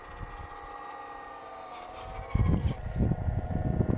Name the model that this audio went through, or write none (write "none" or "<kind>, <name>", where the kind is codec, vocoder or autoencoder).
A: none